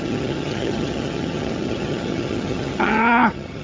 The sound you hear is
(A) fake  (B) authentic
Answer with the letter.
A